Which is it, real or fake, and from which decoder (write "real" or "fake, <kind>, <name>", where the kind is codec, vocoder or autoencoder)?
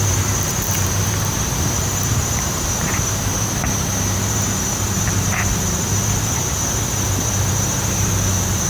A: fake, vocoder, BigVGAN v2